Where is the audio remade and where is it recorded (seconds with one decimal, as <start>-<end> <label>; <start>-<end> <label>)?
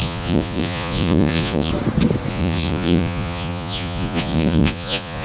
0.0-1.7 remade; 1.7-2.3 recorded; 2.3-5.2 remade